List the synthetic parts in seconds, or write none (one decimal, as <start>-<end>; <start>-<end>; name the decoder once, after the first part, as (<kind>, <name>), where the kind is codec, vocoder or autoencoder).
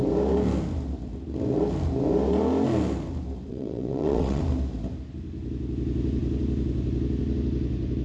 3.5-4.4 (vocoder, WaveNeXt)